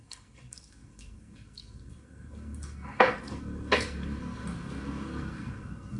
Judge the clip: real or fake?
fake